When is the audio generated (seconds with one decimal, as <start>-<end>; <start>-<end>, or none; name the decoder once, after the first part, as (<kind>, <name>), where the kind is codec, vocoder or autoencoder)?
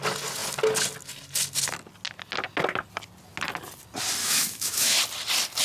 4.2-5.0 (autoencoder, DAC-VAE)